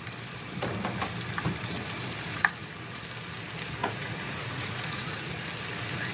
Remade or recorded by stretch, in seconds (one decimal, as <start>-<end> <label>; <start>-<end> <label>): 0.0-2.3 recorded; 2.3-2.8 remade; 2.8-3.8 recorded; 3.8-5.3 remade; 5.3-6.1 recorded